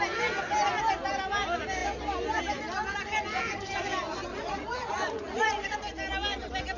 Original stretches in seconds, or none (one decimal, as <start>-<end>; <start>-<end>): 0.0-4.3; 5.7-6.8